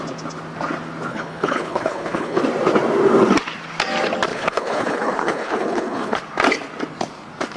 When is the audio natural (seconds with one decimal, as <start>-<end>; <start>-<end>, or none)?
0.0-1.1; 2.4-4.3; 6.2-7.6